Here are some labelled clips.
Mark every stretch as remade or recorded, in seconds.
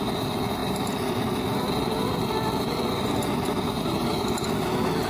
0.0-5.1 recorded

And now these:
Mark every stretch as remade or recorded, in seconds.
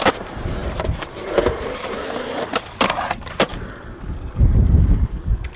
0.0-5.6 remade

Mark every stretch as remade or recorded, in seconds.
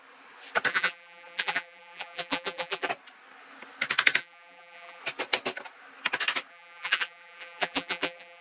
0.0-0.7 recorded; 0.7-2.9 remade; 2.9-4.2 recorded; 4.2-5.0 remade; 5.0-6.5 recorded; 6.5-8.4 remade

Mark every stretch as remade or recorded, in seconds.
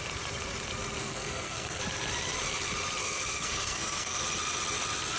0.0-1.0 recorded; 1.0-1.8 remade; 1.8-3.0 recorded; 3.0-4.2 remade; 4.2-5.2 recorded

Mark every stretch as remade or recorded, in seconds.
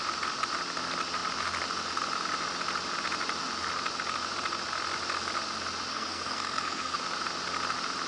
0.0-5.9 recorded; 5.9-7.0 remade; 7.0-8.1 recorded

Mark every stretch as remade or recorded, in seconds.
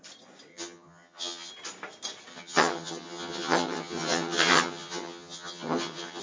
0.0-0.5 recorded; 0.5-1.5 remade; 1.5-2.3 recorded; 2.3-6.2 remade